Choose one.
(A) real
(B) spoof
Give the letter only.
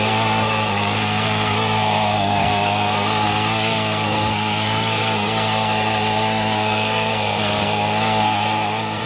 B